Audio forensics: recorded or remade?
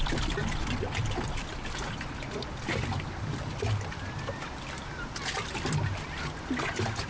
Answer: recorded